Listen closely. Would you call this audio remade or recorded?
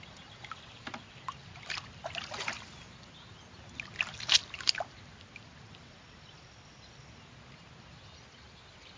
recorded